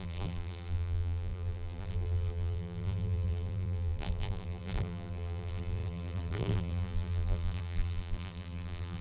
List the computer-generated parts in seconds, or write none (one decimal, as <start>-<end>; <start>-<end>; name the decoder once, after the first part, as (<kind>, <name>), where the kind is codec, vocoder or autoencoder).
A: 0.0-9.0 (vocoder, BigVGAN v2)